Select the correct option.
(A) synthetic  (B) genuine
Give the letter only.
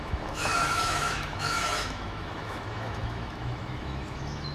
A